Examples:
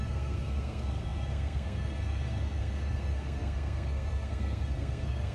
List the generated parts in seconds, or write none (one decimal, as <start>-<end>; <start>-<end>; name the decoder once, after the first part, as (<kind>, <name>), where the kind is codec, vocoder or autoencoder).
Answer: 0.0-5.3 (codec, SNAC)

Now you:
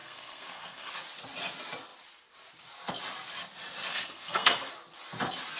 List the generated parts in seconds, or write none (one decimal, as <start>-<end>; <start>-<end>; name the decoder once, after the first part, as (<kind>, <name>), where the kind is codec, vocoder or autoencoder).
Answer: 0.0-0.9 (codec, SNAC); 3.9-4.7

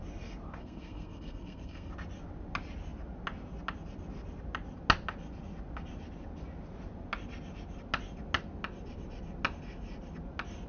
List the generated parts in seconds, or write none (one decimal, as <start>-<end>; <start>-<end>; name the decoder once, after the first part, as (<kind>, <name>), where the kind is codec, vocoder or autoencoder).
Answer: 0.6-1.9 (codec, SNAC)

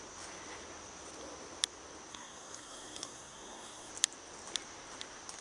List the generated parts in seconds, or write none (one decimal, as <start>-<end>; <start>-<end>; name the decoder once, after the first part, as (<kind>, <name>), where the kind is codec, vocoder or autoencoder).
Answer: 2.1-3.9 (codec, SNAC)